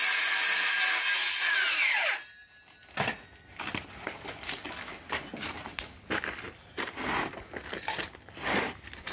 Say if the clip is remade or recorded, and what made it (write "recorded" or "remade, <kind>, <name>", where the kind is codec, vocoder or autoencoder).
recorded